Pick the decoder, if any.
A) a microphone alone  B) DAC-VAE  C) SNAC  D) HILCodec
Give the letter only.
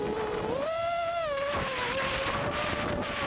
A